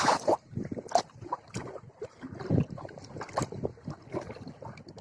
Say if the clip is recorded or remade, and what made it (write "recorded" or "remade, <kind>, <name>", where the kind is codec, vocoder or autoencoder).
recorded